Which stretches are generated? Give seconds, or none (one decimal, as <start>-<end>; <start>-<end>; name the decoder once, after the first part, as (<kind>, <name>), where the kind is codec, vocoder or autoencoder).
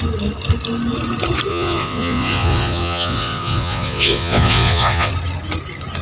1.5-5.1 (vocoder, Vocos)